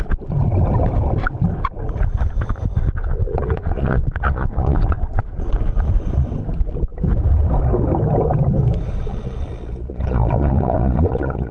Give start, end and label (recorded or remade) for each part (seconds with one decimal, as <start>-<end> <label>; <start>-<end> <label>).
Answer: 0.0-3.0 recorded; 3.0-5.9 remade; 5.9-9.1 recorded; 9.1-11.5 remade